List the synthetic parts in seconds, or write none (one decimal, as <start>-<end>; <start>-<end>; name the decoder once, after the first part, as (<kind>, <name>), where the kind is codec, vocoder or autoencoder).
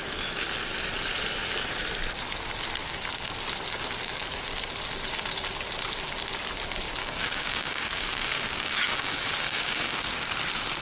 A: 7.0-10.0 (codec, DAC)